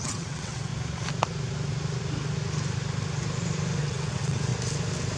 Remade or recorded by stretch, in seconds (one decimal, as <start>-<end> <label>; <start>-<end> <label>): 0.0-0.7 remade; 0.7-3.8 recorded; 3.8-4.5 remade; 4.5-5.2 recorded